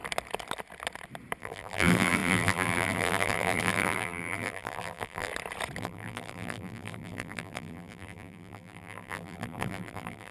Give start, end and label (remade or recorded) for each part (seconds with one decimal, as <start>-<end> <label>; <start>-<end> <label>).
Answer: 0.0-1.4 recorded; 1.4-5.3 remade; 5.3-5.8 recorded; 5.8-10.3 remade